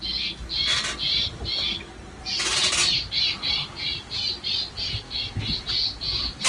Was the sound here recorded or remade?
recorded